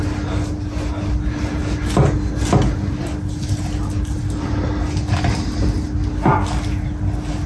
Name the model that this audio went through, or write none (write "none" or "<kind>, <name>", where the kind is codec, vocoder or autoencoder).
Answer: none